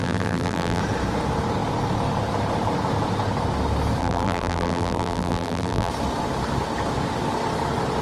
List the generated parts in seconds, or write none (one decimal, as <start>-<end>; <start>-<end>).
0.0-0.8; 4.0-5.9